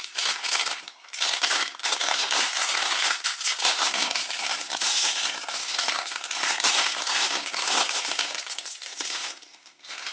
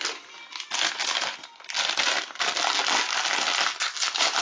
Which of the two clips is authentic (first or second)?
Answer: second